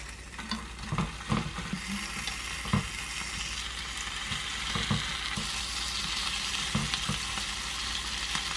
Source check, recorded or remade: recorded